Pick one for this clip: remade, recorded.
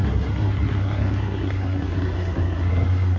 remade